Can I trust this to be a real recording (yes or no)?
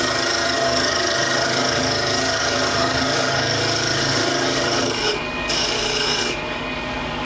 no